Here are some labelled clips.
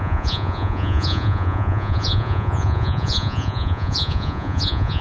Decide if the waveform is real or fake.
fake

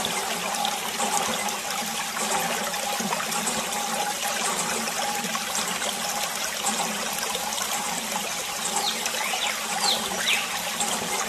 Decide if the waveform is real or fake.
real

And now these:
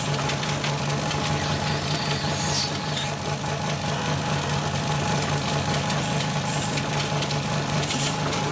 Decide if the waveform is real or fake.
real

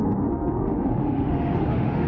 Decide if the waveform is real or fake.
fake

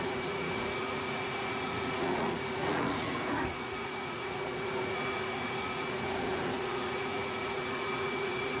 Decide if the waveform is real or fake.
fake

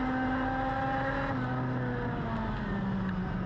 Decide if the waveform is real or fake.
real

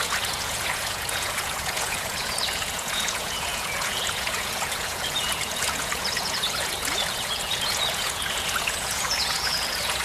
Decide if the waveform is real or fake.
fake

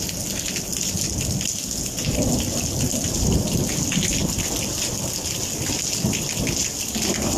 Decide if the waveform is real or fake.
real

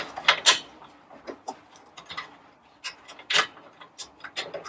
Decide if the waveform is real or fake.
real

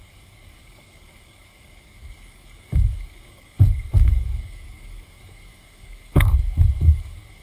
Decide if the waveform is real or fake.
fake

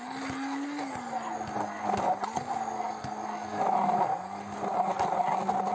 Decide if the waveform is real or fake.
real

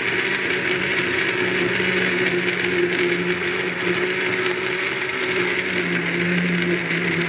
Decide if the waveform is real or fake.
real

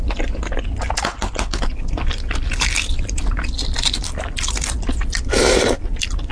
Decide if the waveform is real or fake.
real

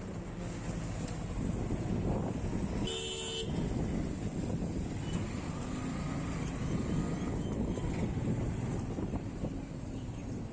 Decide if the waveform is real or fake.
real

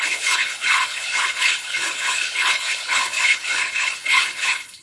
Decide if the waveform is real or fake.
fake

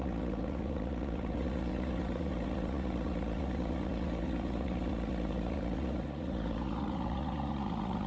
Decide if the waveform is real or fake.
fake